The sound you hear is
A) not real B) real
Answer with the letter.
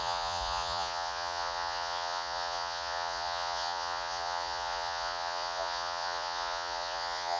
A